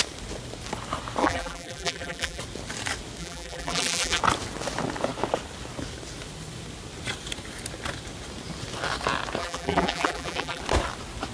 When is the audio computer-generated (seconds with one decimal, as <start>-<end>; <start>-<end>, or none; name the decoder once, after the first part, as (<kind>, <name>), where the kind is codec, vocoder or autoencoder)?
1.2-2.4 (vocoder, BigVGAN v2); 3.2-4.2; 9.4-10.6